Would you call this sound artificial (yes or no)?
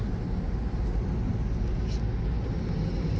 no